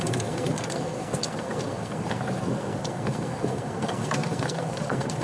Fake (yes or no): yes